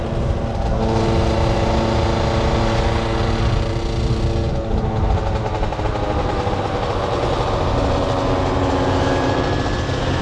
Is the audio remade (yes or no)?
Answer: no